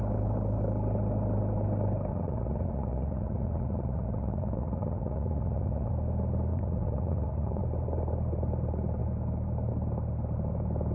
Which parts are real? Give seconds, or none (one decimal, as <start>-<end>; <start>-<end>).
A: 0.0-2.1; 5.9-6.5; 7.6-10.9